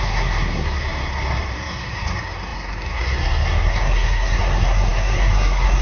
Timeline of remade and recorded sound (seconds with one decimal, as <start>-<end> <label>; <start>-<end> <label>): 0.0-5.8 remade